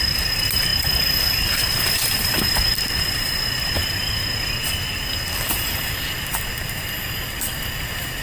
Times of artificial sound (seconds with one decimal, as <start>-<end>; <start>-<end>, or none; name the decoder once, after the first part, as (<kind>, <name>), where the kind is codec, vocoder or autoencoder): none